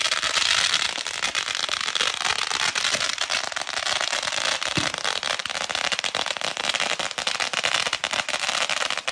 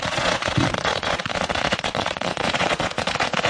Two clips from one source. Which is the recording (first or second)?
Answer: first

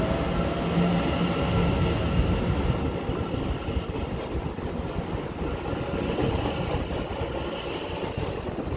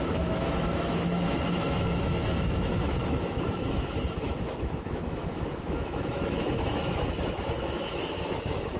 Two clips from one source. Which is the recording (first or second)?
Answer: first